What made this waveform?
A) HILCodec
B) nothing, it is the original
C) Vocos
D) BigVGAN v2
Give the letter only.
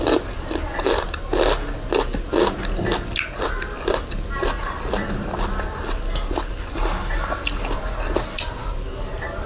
B